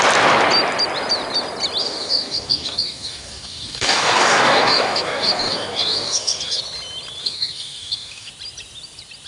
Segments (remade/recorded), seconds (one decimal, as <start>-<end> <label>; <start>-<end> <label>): 0.0-1.8 recorded; 1.8-6.6 remade; 6.6-7.2 recorded; 7.2-8.3 remade; 8.3-9.3 recorded